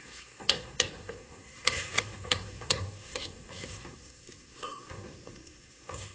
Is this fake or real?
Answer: fake